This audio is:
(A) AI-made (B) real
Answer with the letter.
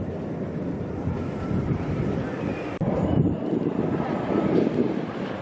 A